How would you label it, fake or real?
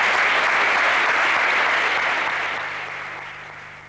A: real